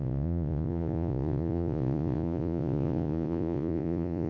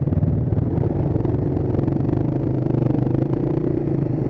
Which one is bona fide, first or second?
second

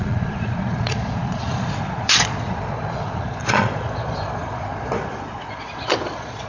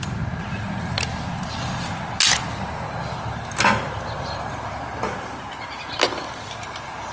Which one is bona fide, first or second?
second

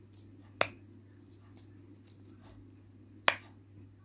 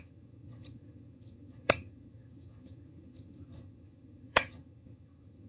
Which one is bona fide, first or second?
first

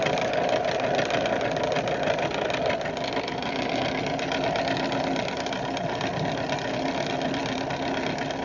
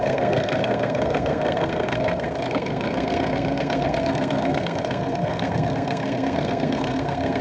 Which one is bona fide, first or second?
first